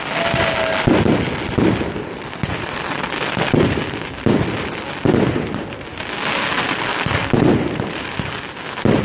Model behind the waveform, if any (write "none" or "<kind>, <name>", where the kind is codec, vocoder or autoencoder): none